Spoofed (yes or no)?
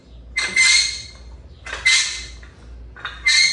no